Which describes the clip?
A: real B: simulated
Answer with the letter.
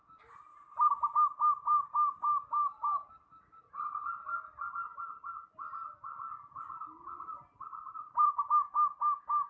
A